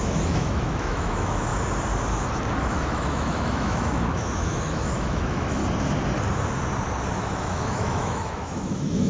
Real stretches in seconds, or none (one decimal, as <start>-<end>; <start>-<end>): 1.5-2.6; 5.6-7.1